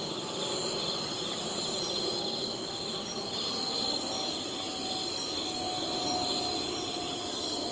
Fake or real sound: real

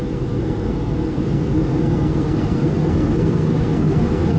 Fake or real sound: fake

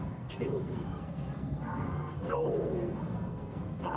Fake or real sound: fake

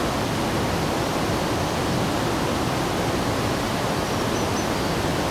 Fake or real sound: real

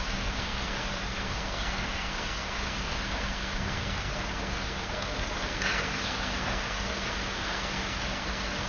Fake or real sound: fake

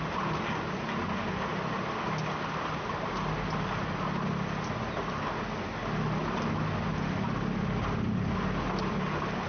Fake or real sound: real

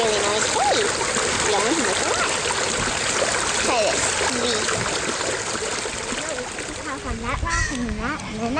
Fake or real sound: real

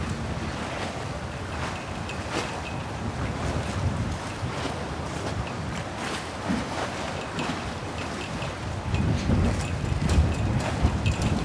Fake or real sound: real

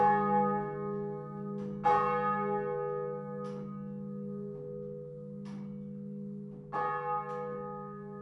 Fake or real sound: real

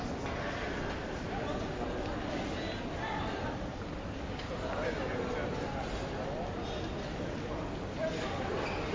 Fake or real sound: real